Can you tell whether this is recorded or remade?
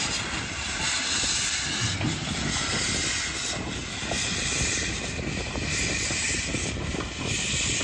recorded